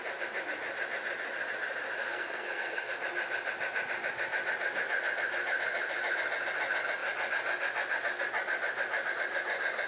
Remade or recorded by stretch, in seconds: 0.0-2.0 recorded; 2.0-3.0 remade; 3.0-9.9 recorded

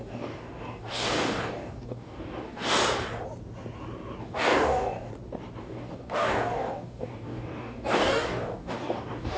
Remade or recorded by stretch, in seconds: 0.0-2.8 remade; 2.8-4.2 recorded; 4.2-5.1 remade; 5.1-5.6 recorded; 5.6-9.4 remade

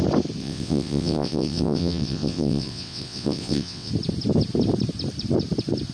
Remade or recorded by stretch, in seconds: 0.0-0.4 recorded; 0.4-3.9 remade; 3.9-5.9 recorded

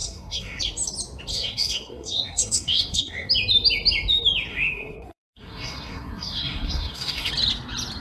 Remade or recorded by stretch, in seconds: 0.0-0.6 remade; 0.6-1.3 recorded; 1.3-3.3 remade; 3.3-4.5 recorded; 4.5-7.3 remade; 7.3-8.0 recorded

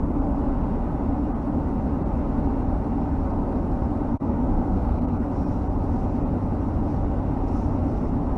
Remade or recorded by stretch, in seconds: 0.0-4.1 recorded; 4.1-5.2 remade; 5.2-8.4 recorded